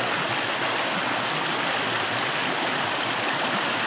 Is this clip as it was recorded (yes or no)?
yes